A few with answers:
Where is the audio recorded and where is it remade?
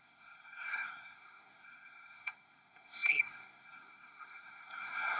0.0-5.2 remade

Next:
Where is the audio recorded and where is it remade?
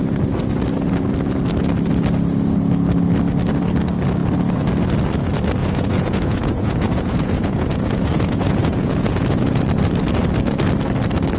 0.0-5.6 recorded; 5.6-9.6 remade; 9.6-11.4 recorded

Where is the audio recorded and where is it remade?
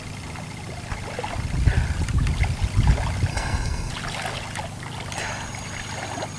0.0-3.3 recorded; 3.3-3.9 remade; 3.9-6.4 recorded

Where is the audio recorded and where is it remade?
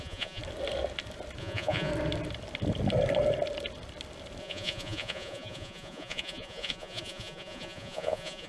0.0-0.4 remade; 0.4-1.4 recorded; 1.4-1.9 remade; 1.9-4.4 recorded; 4.4-8.5 remade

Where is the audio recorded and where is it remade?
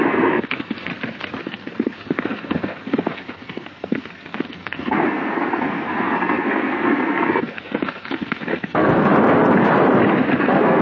0.0-0.9 remade; 0.9-1.4 recorded; 1.4-9.1 remade; 9.1-10.4 recorded; 10.4-10.8 remade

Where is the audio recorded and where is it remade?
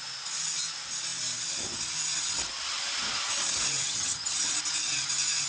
0.0-3.8 recorded; 3.8-4.5 remade; 4.5-5.5 recorded